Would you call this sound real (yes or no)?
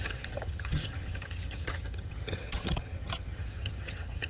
no